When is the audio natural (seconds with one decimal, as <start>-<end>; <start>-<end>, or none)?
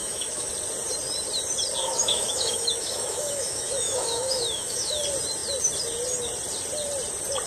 0.5-1.8; 5.0-7.5